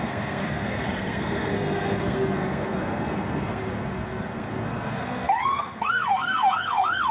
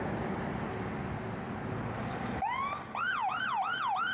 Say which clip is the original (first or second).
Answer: second